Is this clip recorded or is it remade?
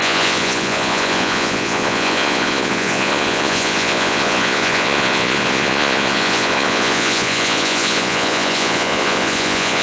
remade